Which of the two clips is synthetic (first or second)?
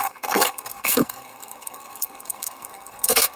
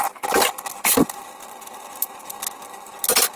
first